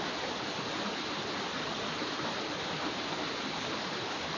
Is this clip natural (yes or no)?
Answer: yes